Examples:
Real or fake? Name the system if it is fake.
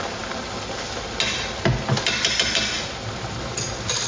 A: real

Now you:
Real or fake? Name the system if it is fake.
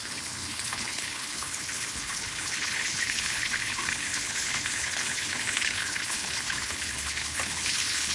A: fake, codec, HILCodec